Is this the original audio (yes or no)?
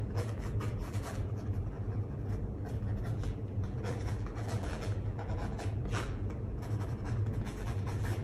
no